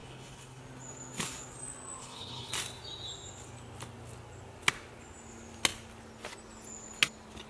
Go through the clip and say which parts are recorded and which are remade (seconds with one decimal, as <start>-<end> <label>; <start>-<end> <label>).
0.0-0.6 remade; 0.6-2.0 recorded; 2.0-2.5 remade; 2.5-7.5 recorded